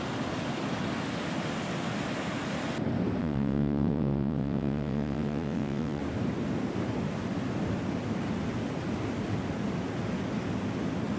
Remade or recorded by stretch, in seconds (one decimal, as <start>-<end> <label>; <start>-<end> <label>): 0.0-3.2 recorded; 3.2-6.0 remade; 6.0-11.2 recorded